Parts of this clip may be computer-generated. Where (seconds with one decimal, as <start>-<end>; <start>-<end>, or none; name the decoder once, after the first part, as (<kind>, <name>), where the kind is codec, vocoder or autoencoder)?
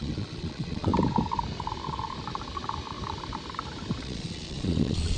0.0-0.9 (vocoder, Vocos); 4.0-5.2